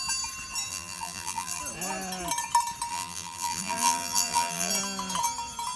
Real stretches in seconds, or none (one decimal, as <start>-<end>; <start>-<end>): 0.0-0.7; 1.6-2.9; 4.7-5.8